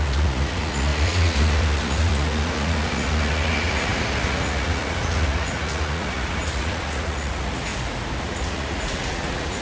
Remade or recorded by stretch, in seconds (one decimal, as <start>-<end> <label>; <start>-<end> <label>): 0.0-7.7 remade; 7.7-8.2 recorded; 8.2-9.6 remade